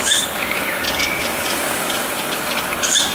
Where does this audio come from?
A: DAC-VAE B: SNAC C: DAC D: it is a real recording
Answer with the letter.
C